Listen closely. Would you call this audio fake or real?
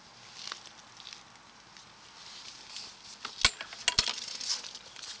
real